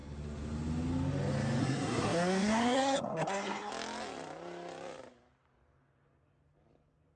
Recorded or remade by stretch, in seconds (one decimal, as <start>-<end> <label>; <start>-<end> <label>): 0.0-1.6 recorded; 1.6-3.7 remade; 3.7-7.2 recorded